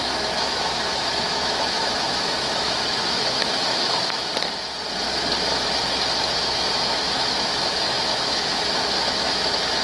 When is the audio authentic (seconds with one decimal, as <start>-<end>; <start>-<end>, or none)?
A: 4.3-6.2